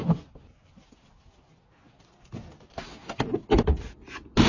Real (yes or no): yes